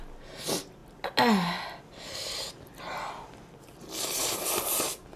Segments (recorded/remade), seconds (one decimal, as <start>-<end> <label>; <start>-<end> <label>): 0.0-5.2 recorded